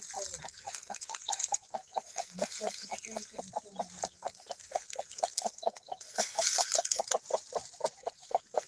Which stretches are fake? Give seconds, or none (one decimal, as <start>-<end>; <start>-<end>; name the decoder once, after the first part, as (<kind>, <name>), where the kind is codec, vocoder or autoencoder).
0.4-3.4 (codec, SNAC); 4.0-7.0; 8.0-8.7